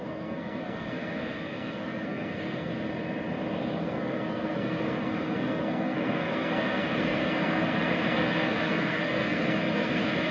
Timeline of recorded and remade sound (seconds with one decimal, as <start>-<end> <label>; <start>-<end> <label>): 0.0-2.7 remade; 2.7-3.8 recorded; 3.8-10.3 remade